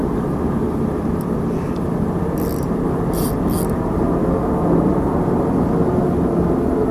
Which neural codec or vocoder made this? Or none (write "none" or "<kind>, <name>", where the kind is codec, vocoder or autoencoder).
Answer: none